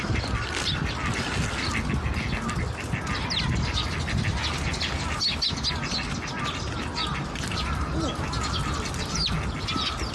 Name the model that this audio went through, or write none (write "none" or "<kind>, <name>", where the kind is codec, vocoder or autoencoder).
none